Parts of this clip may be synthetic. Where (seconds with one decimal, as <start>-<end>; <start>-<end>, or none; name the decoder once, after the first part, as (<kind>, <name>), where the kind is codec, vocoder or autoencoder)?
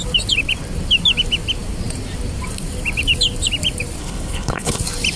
4.0-4.8 (codec, HILCodec)